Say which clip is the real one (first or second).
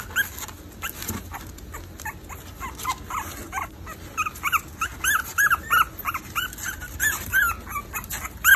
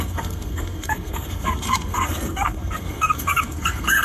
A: first